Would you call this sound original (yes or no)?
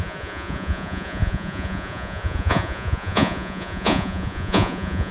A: no